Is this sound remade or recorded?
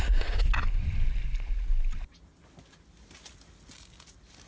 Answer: recorded